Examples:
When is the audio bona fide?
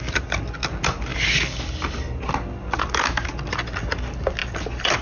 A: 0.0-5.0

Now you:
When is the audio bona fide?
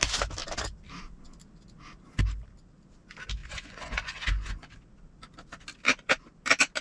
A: 0.0-3.4; 4.7-6.8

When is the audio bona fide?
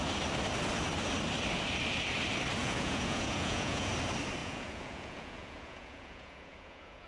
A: 0.0-2.6; 3.9-4.4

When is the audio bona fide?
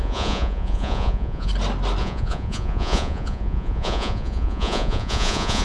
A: 1.5-2.0